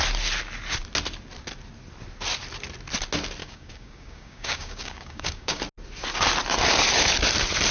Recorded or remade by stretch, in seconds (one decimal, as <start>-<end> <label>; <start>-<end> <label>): 0.0-3.4 recorded; 3.4-5.6 remade; 5.6-7.7 recorded

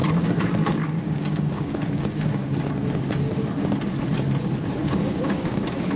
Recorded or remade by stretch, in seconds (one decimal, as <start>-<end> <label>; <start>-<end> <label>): 0.0-3.0 remade; 3.0-4.8 recorded; 4.8-6.0 remade

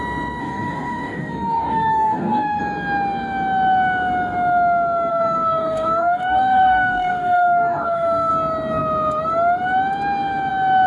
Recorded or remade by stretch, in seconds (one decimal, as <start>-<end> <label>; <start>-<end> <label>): 0.0-0.4 recorded; 0.4-2.6 remade; 2.6-5.1 recorded; 5.1-8.3 remade; 8.3-10.9 recorded